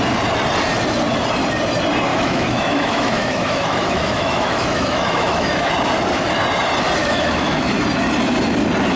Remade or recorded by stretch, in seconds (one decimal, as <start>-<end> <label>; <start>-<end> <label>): 0.0-2.1 recorded; 2.1-5.7 remade; 5.7-7.0 recorded; 7.0-7.7 remade; 7.7-9.0 recorded